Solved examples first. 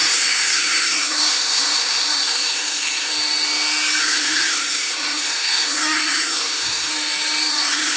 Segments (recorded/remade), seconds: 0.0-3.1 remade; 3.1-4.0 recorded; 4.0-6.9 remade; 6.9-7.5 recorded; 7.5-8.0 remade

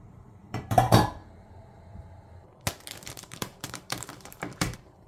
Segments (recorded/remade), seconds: 0.0-1.2 remade; 1.2-3.1 recorded; 3.1-5.1 remade

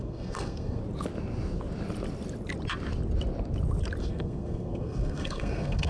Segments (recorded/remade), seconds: 0.0-0.8 remade; 0.8-4.0 recorded; 4.0-5.9 remade

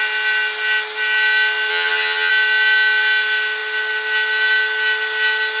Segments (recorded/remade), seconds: 0.0-1.7 recorded; 1.7-2.3 remade; 2.3-5.6 recorded

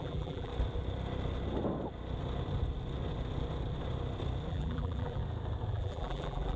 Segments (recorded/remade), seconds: 0.0-0.5 remade; 0.5-4.5 recorded; 4.5-5.2 remade; 5.2-5.7 recorded; 5.7-6.6 remade

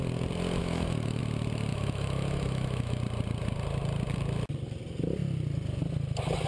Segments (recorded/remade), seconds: 0.0-0.6 recorded; 0.6-1.2 remade; 1.2-1.7 recorded; 1.7-3.0 remade; 3.0-6.5 recorded

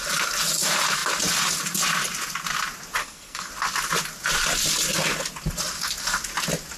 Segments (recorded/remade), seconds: 0.0-3.0 recorded; 3.0-3.5 remade; 3.5-6.8 recorded

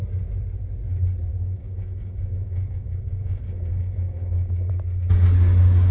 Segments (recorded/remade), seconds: 0.0-1.3 recorded; 1.3-4.7 remade; 4.7-5.9 recorded